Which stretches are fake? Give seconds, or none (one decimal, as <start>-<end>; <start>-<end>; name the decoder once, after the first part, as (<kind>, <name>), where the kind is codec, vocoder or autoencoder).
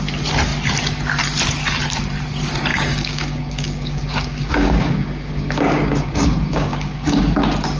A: 2.7-7.2 (codec, DAC)